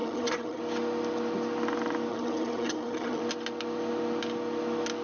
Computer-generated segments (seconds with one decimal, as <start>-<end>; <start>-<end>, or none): 0.0-0.6; 2.1-3.2

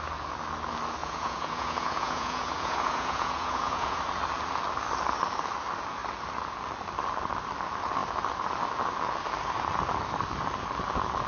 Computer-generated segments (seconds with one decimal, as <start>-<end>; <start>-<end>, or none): 1.0-4.0

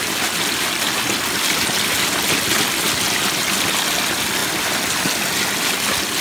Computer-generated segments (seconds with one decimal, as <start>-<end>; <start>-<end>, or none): none

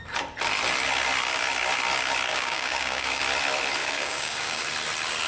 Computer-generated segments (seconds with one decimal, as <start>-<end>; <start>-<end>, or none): 2.3-3.2; 3.8-4.6